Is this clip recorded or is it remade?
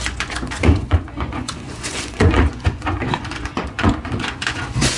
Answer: remade